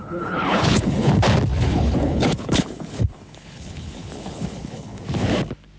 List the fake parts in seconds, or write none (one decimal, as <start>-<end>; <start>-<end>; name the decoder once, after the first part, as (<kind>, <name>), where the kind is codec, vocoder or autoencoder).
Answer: 0.0-1.1 (codec, HILCodec); 1.5-5.0